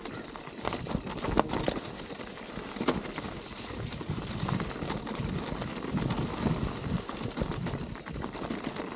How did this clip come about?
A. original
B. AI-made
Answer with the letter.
A